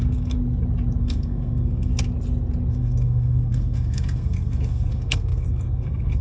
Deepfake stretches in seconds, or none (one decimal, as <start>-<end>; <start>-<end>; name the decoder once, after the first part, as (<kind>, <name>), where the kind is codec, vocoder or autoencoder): 0.0-0.4 (codec, SNAC); 1.0-1.9; 2.7-6.2